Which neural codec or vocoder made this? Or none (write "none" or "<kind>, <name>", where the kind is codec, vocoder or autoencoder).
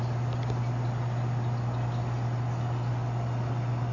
none